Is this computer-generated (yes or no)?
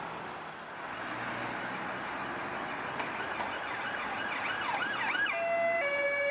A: no